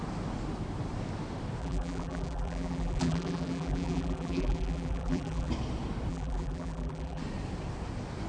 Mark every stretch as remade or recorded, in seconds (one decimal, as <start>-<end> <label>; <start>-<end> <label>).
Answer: 0.0-1.6 recorded; 1.6-5.5 remade; 5.5-6.1 recorded; 6.1-7.2 remade; 7.2-8.3 recorded

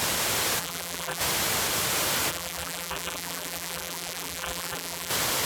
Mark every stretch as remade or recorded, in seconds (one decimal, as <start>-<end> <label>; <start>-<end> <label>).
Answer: 0.0-0.6 recorded; 0.6-1.2 remade; 1.2-2.3 recorded; 2.3-5.1 remade; 5.1-5.5 recorded